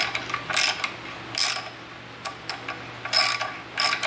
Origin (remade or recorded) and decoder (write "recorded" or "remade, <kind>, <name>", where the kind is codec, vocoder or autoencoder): recorded